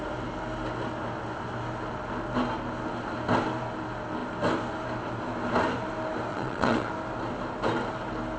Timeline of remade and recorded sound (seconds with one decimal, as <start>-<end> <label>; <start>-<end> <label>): 0.0-6.3 recorded; 6.3-6.9 remade; 6.9-8.4 recorded